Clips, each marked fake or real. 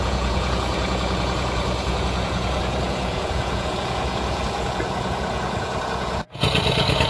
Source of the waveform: fake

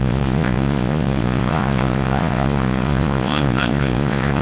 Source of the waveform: fake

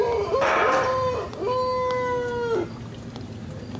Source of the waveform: real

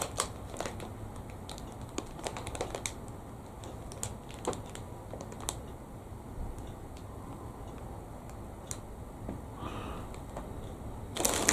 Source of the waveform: real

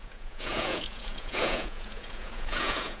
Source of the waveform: fake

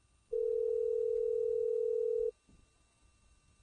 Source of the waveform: real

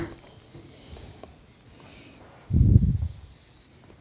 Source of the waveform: real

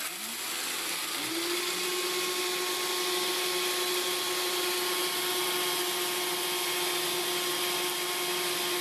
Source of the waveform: real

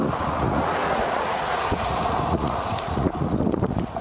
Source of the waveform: fake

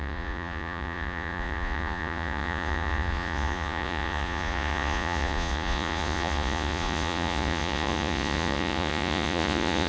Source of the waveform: fake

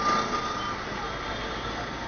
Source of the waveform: real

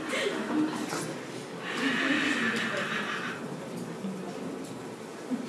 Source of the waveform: real